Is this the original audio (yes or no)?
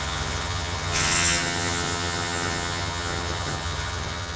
no